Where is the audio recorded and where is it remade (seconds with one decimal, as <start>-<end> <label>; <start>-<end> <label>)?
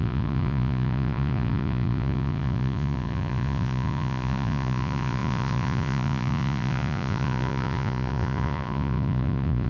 0.0-9.7 remade